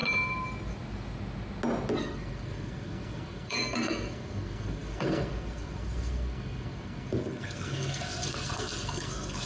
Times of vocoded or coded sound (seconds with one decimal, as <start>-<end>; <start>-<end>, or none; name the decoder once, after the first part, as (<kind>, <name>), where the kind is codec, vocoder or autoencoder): 1.9-9.5 (codec, SNAC)